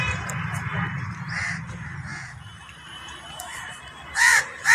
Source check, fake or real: fake